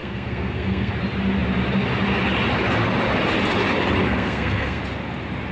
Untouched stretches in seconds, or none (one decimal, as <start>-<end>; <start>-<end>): 0.9-4.0; 4.8-5.5